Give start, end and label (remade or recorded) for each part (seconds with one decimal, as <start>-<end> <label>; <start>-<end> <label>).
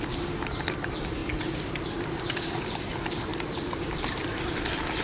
0.0-1.2 recorded; 1.2-2.9 remade; 2.9-3.3 recorded; 3.3-4.4 remade; 4.4-5.0 recorded